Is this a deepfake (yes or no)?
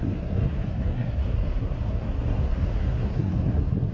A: yes